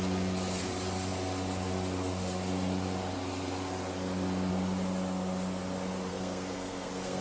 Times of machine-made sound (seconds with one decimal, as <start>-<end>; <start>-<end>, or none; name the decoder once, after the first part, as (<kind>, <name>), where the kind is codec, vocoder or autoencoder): 6.1-7.2 (codec, SNAC)